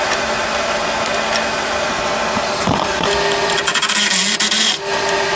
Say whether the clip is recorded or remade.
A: recorded